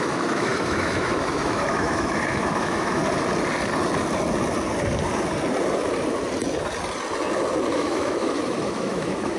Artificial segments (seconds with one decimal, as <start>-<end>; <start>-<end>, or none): 0.0-3.0; 7.7-9.4